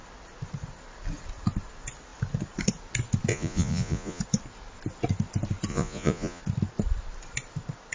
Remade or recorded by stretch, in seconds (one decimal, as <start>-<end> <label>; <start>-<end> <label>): 0.0-3.3 recorded; 3.3-4.2 remade; 4.2-5.7 recorded; 5.7-6.4 remade; 6.4-7.9 recorded